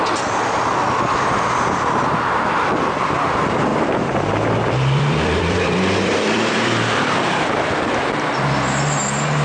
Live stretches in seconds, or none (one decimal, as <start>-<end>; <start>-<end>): 0.0-3.7; 8.5-9.4